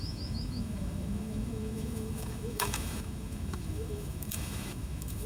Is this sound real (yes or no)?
no